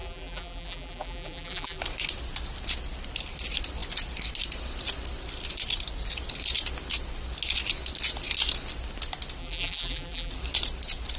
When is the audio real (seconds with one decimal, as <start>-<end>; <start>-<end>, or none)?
1.8-9.4; 10.3-11.2